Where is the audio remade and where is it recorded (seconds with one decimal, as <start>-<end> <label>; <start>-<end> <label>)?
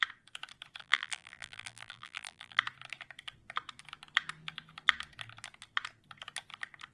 0.0-0.8 recorded; 0.8-2.6 remade; 2.6-6.9 recorded